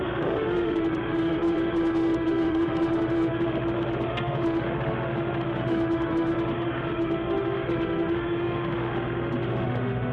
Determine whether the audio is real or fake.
fake